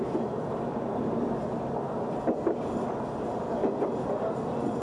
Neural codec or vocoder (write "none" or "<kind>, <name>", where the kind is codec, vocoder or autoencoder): none